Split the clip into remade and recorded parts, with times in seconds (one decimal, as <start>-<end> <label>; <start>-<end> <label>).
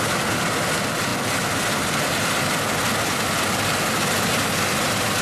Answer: 0.0-5.2 recorded